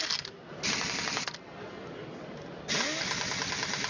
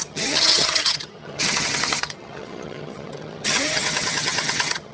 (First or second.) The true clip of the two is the first